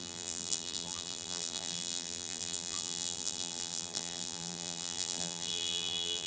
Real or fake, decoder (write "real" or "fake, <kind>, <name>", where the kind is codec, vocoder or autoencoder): fake, vocoder, BigVGAN v2